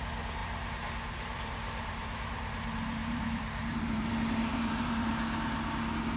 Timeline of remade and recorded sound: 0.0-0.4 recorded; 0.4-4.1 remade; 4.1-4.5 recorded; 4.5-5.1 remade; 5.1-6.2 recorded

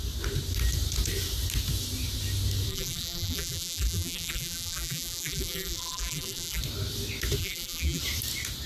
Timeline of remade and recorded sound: 0.0-2.7 recorded; 2.7-6.6 remade; 6.6-7.4 recorded; 7.4-8.0 remade; 8.0-8.7 recorded

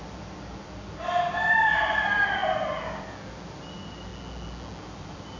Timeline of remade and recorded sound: 0.0-4.1 remade; 4.1-4.8 recorded; 4.8-5.4 remade

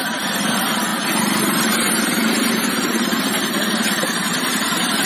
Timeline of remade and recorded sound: 0.0-0.9 recorded; 0.9-3.2 remade; 3.2-5.1 recorded

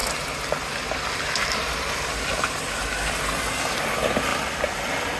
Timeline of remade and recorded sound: 0.0-2.9 remade; 2.9-4.3 recorded; 4.3-5.2 remade